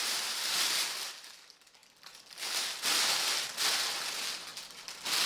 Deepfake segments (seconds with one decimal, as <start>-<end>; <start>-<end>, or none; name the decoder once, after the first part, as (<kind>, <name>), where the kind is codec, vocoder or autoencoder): none